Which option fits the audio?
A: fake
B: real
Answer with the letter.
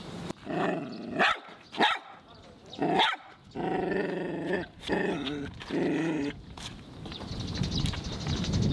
B